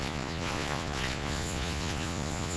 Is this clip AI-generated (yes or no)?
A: yes